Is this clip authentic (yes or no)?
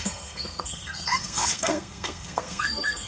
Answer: no